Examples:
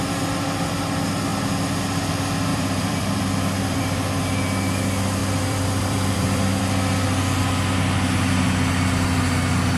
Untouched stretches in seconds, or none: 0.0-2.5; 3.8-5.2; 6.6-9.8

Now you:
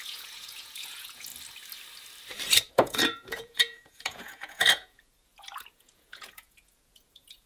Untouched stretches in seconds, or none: 1.3-2.7

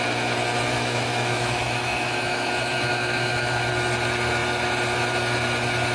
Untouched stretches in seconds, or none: 0.0-0.7; 3.6-5.9

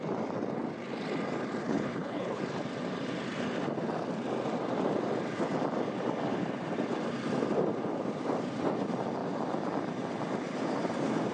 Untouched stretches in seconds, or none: 0.0-1.6; 2.4-11.3

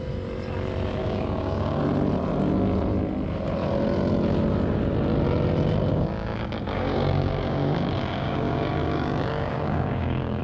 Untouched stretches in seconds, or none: 0.0-1.0; 1.8-5.9

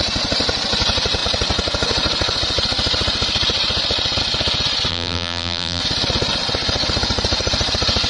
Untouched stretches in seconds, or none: 0.0-4.9; 5.8-8.1

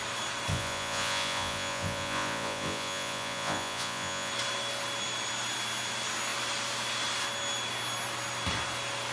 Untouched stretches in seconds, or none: 0.0-0.5; 4.3-9.1

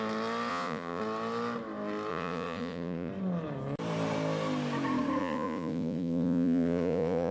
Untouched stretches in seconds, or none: 0.0-0.5; 1.0-2.1; 3.1-5.2